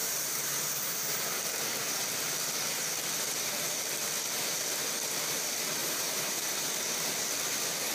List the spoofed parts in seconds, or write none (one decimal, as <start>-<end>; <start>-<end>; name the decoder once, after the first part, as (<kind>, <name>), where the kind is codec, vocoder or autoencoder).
0.0-1.2 (vocoder, BigVGAN v2); 5.8-6.7

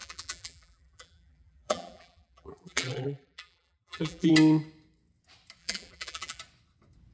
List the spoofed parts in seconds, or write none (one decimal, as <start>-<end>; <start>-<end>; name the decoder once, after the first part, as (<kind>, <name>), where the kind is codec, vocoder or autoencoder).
0.0-4.3 (vocoder, BigVGAN v2); 5.6-6.4

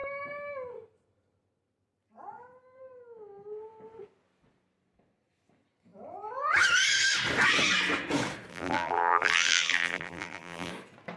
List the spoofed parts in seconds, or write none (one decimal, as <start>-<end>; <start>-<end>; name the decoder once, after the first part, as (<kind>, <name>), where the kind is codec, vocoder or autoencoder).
8.5-10.7 (vocoder, BigVGAN v2)